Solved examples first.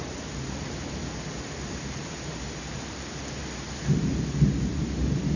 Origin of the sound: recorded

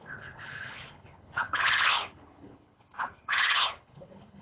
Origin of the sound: remade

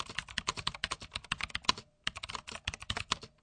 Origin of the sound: recorded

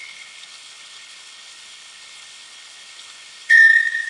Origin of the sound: remade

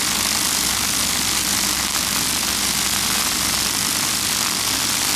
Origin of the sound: recorded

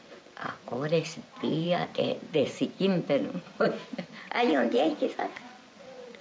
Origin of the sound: remade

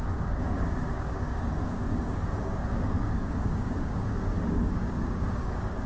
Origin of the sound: remade